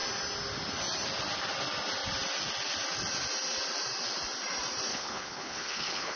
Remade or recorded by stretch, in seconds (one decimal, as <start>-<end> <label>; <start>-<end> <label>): 0.0-4.9 recorded; 4.9-6.2 remade